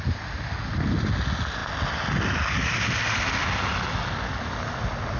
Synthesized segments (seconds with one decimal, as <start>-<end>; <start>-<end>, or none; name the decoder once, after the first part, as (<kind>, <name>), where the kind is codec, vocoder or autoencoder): none

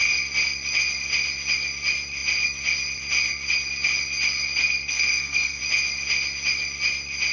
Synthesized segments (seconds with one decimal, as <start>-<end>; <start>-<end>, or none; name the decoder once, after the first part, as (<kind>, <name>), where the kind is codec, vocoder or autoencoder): 4.9-5.6 (codec, SNAC)

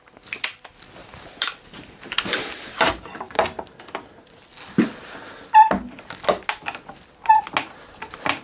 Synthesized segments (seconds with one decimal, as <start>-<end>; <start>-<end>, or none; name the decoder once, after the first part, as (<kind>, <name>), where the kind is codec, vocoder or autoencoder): 1.0-3.8 (vocoder, BigVGAN v2)

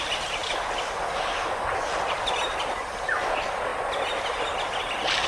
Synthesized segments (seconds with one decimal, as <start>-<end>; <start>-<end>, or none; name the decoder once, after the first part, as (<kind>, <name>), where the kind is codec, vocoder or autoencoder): none

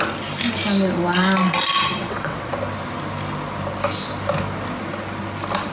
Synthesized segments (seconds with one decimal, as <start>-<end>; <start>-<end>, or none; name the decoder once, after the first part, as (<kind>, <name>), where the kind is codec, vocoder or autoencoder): 1.9-2.5 (vocoder, WaveNeXt)

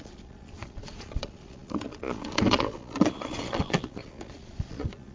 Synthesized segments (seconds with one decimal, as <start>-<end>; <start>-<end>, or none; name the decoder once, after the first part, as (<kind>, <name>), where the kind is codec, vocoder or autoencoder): 0.0-5.1 (vocoder, Vocos)

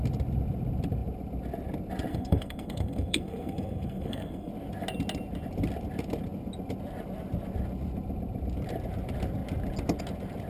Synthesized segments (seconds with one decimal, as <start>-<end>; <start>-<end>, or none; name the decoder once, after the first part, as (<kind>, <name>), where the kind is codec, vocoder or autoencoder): 2.1-4.5 (codec, SNAC)

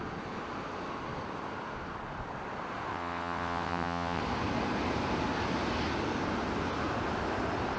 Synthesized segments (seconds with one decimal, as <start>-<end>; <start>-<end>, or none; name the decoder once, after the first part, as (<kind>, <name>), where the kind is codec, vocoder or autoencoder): 2.9-4.2 (vocoder, WaveNeXt)